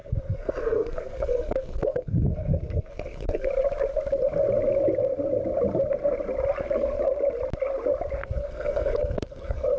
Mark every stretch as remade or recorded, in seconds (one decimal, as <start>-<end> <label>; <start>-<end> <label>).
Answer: 0.0-3.5 remade; 3.5-8.2 recorded; 8.2-9.8 remade